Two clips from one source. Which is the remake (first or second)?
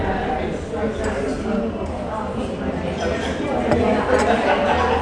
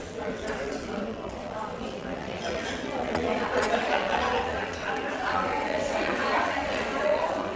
second